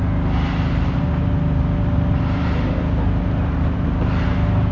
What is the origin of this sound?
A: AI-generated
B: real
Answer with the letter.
B